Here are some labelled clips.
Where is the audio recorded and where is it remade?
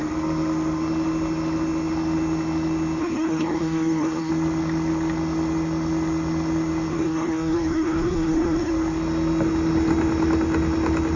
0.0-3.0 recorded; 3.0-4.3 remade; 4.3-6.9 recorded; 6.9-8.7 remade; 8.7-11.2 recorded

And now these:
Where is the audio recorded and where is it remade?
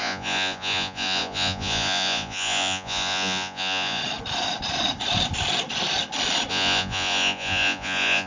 0.0-4.0 remade; 4.0-6.5 recorded; 6.5-8.3 remade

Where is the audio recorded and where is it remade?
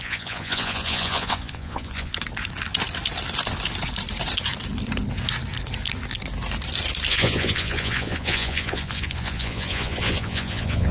0.0-2.1 remade; 2.1-7.1 recorded; 7.1-10.9 remade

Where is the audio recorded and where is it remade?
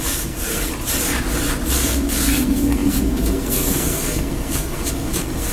0.0-0.7 remade; 0.7-1.7 recorded; 1.7-5.5 remade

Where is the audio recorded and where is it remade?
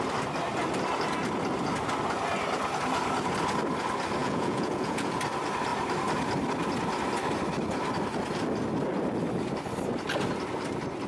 0.0-4.2 recorded; 4.2-5.2 remade; 5.2-11.1 recorded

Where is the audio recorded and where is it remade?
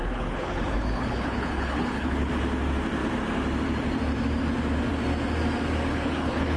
0.0-2.3 remade; 2.3-5.9 recorded; 5.9-6.6 remade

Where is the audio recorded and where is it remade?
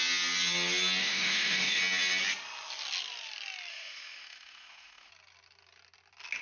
0.0-1.0 recorded; 1.0-1.8 remade; 1.8-3.7 recorded; 3.7-5.1 remade; 5.1-6.4 recorded